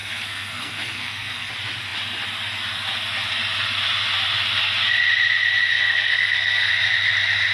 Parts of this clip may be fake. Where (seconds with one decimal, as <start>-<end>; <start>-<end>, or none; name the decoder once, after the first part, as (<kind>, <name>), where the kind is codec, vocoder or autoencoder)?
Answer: 0.0-1.5 (codec, SNAC); 5.7-6.7